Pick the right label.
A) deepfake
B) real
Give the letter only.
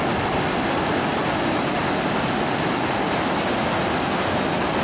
B